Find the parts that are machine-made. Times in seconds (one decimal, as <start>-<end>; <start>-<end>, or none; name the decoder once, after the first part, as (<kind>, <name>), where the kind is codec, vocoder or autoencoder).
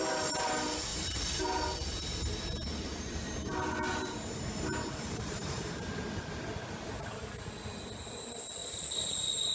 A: 0.9-5.9 (vocoder, BigVGAN v2); 8.6-9.5